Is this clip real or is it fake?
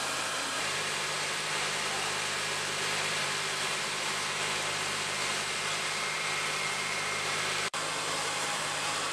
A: fake